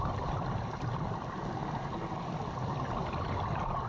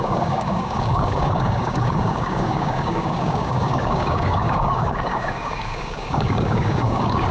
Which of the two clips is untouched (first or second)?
first